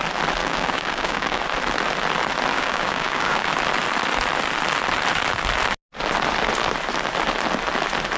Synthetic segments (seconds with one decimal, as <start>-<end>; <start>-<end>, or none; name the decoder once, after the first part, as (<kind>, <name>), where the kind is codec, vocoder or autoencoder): 0.4-1.4 (codec, DAC); 2.5-3.5